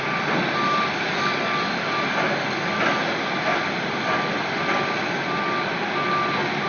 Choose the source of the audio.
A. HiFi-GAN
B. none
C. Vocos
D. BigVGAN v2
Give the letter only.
B